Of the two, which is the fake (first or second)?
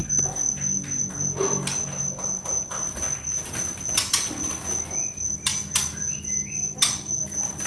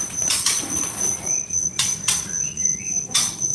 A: second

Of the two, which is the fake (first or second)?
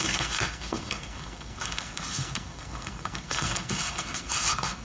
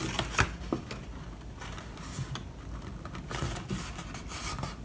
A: first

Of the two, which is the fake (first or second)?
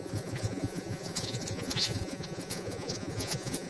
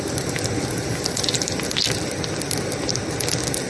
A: first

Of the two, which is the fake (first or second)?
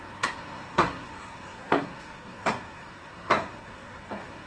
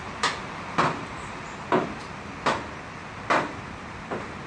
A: first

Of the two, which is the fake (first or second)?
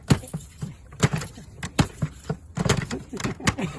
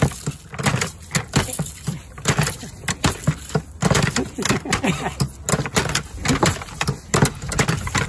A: first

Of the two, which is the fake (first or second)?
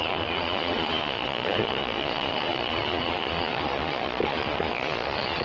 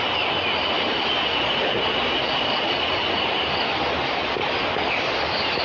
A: first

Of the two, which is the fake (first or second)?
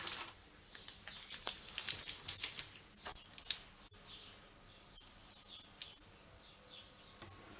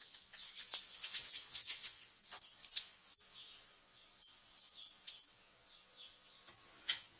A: second